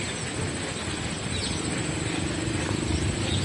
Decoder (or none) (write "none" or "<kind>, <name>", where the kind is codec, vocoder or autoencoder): none